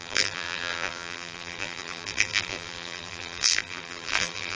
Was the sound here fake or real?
fake